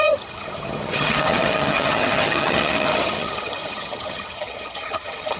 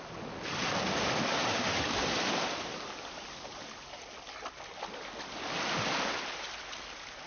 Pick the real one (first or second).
second